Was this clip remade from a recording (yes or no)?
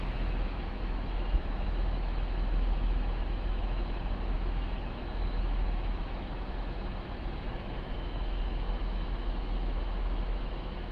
yes